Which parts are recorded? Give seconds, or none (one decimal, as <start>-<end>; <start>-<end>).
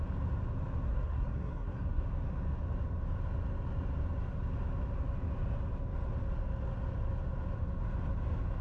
0.0-0.9; 2.0-8.6